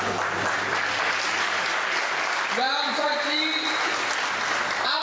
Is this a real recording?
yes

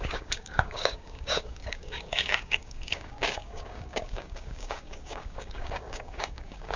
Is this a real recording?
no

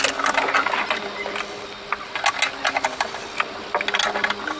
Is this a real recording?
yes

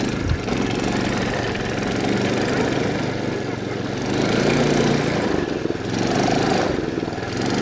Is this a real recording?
yes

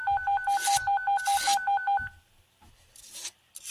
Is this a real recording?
yes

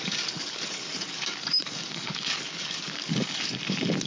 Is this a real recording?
no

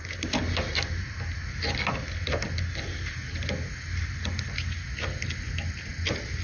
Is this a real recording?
yes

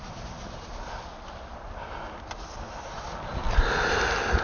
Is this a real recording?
yes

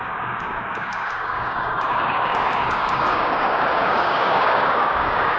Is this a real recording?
no